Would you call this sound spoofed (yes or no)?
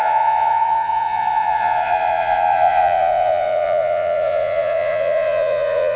yes